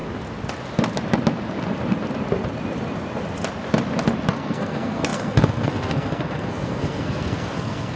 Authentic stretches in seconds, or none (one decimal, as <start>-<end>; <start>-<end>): 0.0-4.3

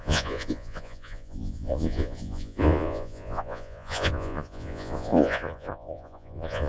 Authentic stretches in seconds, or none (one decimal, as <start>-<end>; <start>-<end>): none